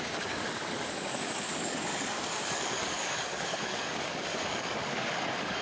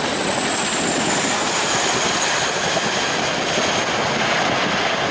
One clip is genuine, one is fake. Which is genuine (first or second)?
second